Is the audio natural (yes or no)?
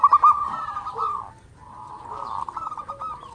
yes